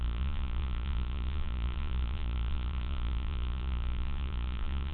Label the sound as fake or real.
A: fake